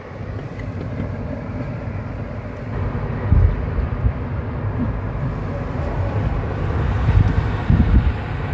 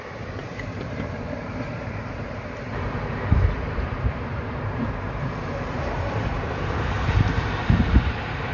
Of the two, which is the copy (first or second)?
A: second